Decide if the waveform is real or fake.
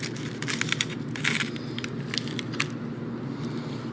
real